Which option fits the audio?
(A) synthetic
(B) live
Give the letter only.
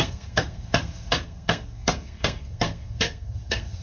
A